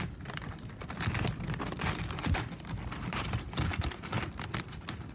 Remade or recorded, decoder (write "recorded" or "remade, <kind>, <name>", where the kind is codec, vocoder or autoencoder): recorded